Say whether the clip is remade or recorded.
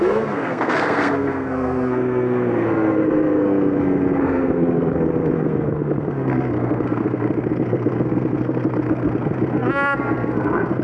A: remade